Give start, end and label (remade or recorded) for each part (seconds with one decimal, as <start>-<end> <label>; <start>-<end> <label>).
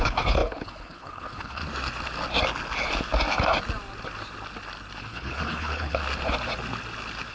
0.0-1.6 remade; 1.6-5.0 recorded; 5.0-6.0 remade; 6.0-7.3 recorded